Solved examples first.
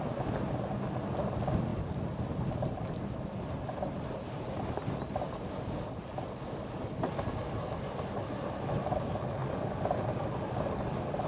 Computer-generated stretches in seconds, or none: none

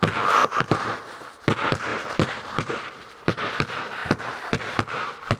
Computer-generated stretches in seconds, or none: 0.4-1.2 (vocoder, BigVGAN v2); 1.9-3.6

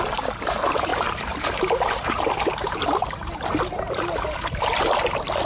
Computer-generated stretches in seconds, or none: 0.0-2.8 (vocoder, BigVGAN v2)

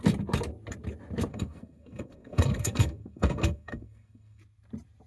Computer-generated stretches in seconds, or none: 1.3-4.4 (codec, SNAC)

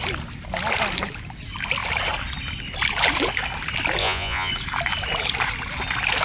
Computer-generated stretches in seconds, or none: 4.0-4.5 (vocoder, Vocos)

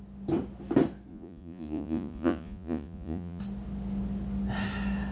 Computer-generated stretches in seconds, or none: 1.1-3.4 (vocoder, Vocos)